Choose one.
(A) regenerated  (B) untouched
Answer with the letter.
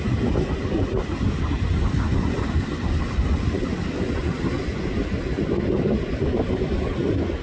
B